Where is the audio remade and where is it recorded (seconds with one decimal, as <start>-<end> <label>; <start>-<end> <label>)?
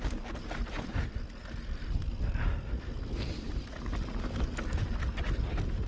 0.0-5.9 recorded